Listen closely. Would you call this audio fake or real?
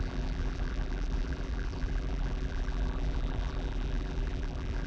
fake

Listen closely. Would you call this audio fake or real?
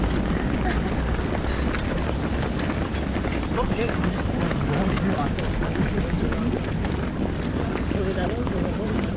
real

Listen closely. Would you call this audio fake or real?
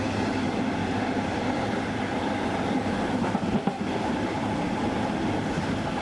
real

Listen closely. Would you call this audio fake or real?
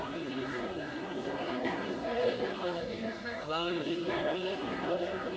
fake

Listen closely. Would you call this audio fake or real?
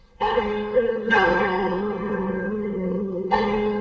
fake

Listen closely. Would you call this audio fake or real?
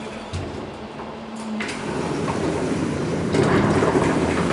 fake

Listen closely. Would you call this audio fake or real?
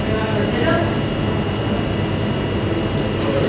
real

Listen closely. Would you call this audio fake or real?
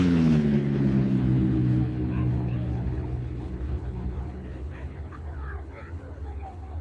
fake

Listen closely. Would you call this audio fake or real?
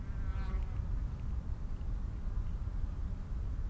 real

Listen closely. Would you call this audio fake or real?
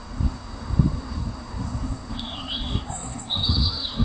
fake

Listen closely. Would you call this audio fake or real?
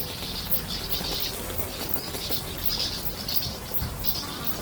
real